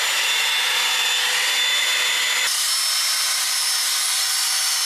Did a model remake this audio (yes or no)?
no